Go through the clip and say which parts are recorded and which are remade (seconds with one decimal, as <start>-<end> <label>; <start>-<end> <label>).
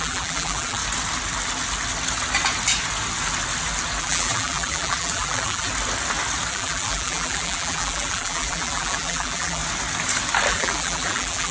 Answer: 0.0-0.8 remade; 0.8-4.0 recorded; 4.0-5.7 remade; 5.7-6.5 recorded; 6.5-9.6 remade; 9.6-10.5 recorded; 10.5-11.5 remade